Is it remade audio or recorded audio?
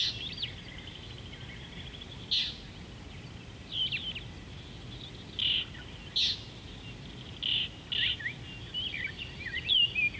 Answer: recorded